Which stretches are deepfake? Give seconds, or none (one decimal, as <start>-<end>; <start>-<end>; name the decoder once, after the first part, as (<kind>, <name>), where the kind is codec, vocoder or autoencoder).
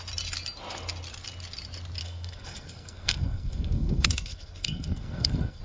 2.0-5.6 (codec, SNAC)